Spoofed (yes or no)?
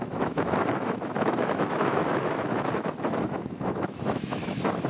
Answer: yes